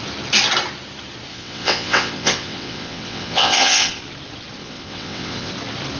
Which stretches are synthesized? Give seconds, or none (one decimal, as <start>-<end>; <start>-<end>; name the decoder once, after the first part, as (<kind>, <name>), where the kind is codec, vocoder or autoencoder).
1.3-4.0 (vocoder, WaveNeXt); 4.6-5.5

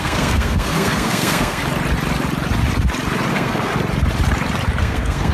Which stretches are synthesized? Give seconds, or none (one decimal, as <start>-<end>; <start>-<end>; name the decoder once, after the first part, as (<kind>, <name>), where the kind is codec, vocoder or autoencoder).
0.0-1.6 (codec, SNAC); 3.3-3.7; 4.8-5.3

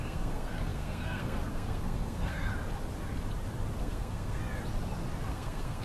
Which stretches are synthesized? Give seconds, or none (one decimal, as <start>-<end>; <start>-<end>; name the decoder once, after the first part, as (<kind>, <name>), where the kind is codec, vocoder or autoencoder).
0.0-2.5 (codec, SNAC); 3.8-4.4; 5.3-5.8

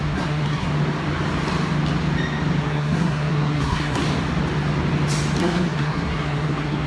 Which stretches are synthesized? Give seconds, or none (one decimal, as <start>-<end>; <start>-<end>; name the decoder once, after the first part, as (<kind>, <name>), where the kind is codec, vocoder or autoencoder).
0.0-0.7 (codec, SNAC); 2.6-4.0; 5.4-6.9

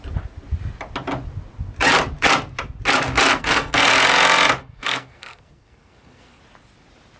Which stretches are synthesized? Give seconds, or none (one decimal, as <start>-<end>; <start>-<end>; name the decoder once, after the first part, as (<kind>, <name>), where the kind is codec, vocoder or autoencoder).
3.3-3.9 (codec, SNAC); 4.6-6.4